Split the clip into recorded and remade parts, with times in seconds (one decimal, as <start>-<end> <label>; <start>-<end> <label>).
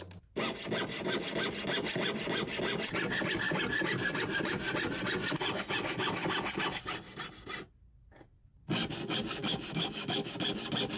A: 0.0-9.4 recorded; 9.4-10.3 remade; 10.3-11.0 recorded